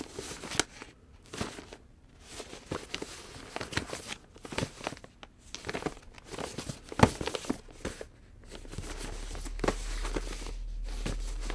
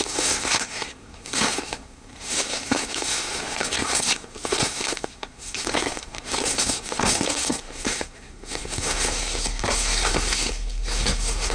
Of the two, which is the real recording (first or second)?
first